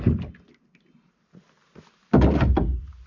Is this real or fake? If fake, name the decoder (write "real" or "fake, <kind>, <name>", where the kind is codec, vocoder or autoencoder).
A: real